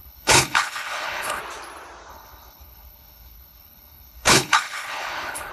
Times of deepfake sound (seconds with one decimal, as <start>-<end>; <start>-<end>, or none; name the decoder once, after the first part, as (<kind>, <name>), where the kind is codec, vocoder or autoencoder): 0.0-1.4 (codec, HILCodec); 2.1-5.5